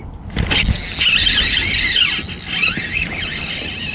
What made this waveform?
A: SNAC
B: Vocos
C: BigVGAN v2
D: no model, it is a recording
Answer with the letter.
D